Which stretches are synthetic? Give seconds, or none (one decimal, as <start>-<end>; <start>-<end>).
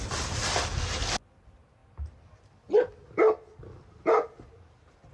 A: none